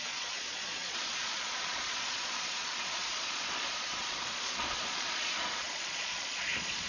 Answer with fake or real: fake